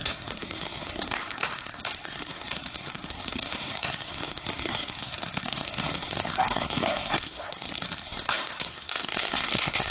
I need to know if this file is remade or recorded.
remade